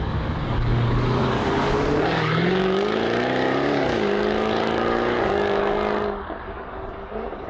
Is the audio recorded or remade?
remade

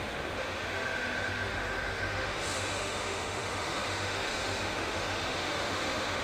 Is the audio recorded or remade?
remade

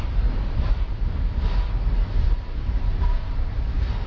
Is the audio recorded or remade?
remade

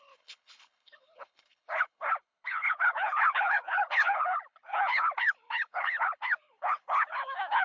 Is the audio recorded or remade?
remade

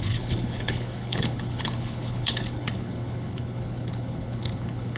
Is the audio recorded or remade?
remade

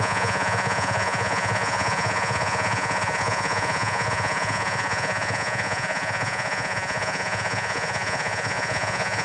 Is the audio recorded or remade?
remade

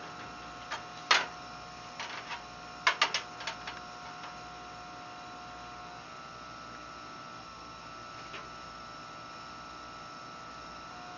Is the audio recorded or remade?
recorded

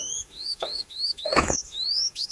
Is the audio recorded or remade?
remade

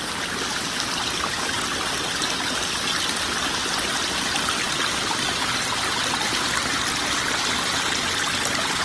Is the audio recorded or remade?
recorded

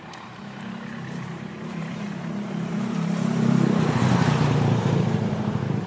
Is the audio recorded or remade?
remade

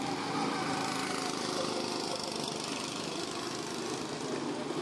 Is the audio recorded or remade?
recorded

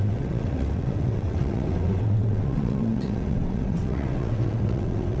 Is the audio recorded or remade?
remade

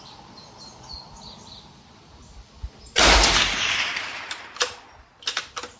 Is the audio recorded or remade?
recorded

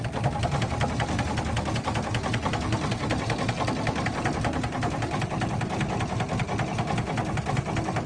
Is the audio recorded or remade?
recorded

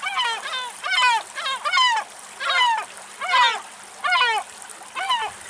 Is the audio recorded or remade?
recorded